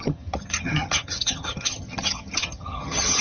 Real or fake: fake